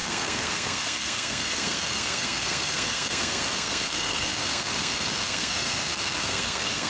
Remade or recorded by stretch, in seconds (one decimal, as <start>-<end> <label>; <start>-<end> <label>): 0.0-6.9 remade

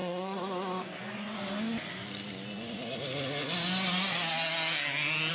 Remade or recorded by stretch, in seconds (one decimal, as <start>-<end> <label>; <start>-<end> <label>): 0.0-1.5 remade; 1.5-5.3 recorded